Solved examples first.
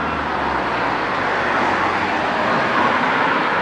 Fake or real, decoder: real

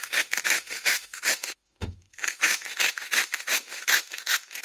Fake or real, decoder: fake, autoencoder, DAC-VAE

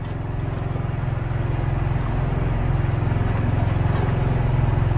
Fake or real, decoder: real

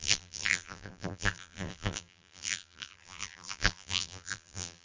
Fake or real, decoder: fake, vocoder, BigVGAN v2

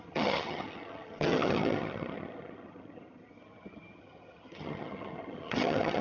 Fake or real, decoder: fake, vocoder, HiFi-GAN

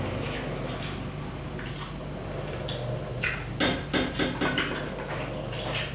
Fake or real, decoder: real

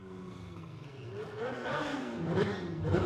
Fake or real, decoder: fake, codec, SNAC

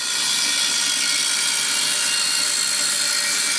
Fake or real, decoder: real